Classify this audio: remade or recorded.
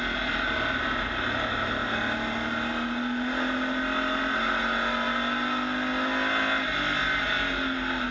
recorded